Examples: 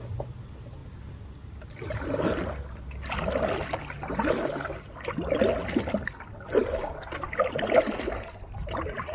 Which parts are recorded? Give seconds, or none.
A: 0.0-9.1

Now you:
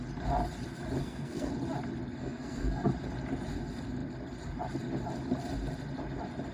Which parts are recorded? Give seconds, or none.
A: 0.0-1.0; 1.5-2.2; 2.9-6.5

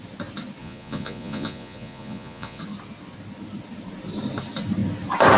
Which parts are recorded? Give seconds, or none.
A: 0.0-0.6; 2.6-5.4

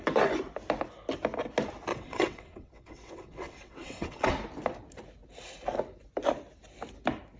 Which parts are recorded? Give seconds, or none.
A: 0.0-1.9; 4.3-7.4

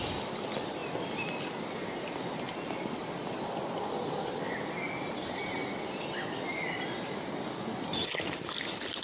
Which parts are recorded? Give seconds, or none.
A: 0.0-9.0

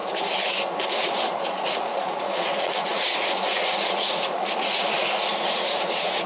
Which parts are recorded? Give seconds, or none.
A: 0.0-0.9

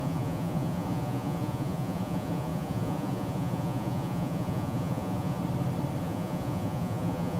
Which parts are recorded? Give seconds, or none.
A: 5.4-6.0

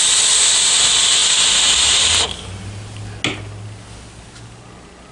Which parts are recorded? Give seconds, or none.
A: 0.0-5.1